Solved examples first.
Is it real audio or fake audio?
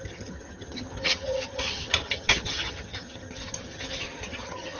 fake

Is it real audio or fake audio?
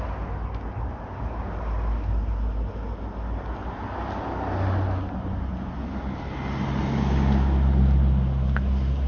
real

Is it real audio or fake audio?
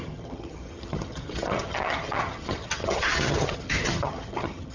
fake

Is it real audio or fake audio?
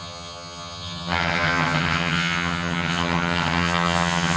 fake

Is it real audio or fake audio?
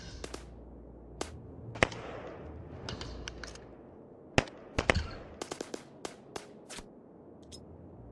real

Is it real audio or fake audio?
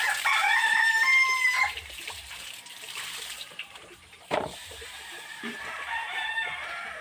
fake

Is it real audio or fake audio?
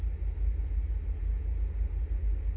real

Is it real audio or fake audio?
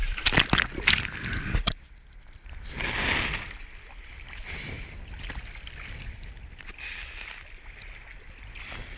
real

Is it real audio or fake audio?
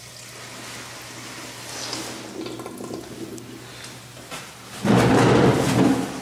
real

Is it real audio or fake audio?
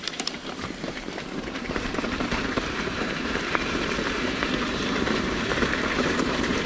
fake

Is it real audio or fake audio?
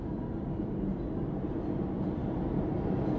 real